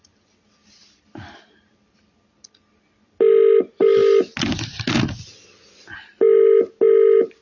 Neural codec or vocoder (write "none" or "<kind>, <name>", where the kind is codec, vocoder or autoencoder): none